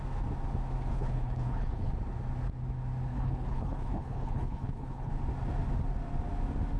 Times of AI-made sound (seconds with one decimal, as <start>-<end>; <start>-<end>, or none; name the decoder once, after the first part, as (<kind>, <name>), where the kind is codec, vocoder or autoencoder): 0.9-1.9 (codec, HILCodec); 3.1-5.1